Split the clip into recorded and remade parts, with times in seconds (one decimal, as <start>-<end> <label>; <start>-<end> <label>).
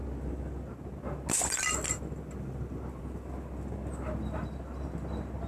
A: 0.0-5.5 recorded